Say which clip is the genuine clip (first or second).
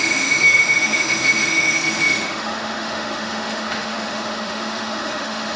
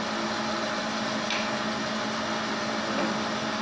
second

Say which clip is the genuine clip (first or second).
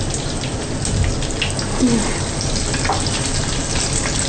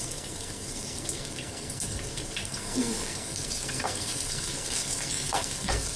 first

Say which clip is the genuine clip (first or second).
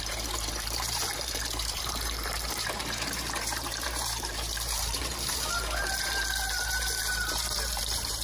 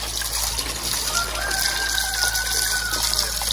second